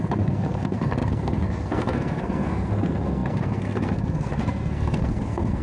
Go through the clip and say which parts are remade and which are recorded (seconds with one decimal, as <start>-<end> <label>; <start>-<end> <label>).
0.0-5.6 remade

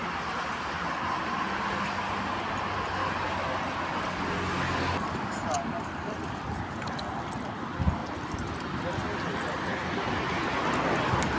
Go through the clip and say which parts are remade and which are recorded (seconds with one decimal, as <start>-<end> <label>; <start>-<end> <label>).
0.0-11.4 recorded

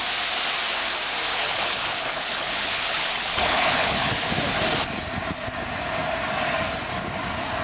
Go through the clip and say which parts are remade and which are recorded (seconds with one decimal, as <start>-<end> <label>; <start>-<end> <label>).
0.0-1.3 recorded; 1.3-4.3 remade; 4.3-7.6 recorded

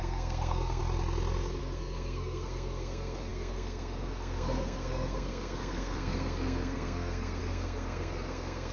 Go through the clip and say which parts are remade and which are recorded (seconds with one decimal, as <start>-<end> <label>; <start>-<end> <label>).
0.0-0.8 remade; 0.8-1.6 recorded; 1.6-8.7 remade

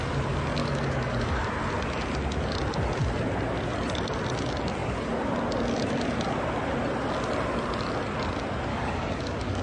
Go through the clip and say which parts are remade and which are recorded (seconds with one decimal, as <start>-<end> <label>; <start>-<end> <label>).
0.0-0.6 recorded; 0.6-1.5 remade; 1.5-8.7 recorded; 8.7-9.6 remade

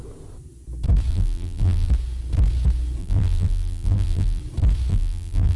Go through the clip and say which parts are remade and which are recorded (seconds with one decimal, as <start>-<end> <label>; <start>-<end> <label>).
0.0-1.1 recorded; 1.1-1.9 remade; 1.9-3.0 recorded; 3.0-4.4 remade; 4.4-4.9 recorded; 4.9-5.6 remade

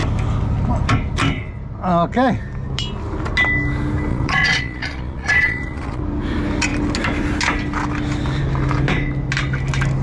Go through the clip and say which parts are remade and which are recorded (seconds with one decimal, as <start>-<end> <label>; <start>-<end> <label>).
0.0-4.1 recorded; 4.1-6.0 remade; 6.0-10.0 recorded